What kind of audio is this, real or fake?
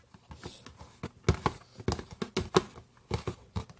real